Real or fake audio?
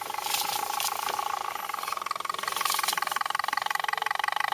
real